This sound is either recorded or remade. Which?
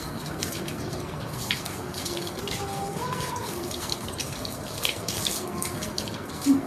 remade